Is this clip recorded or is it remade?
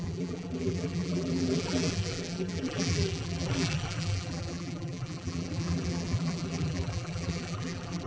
remade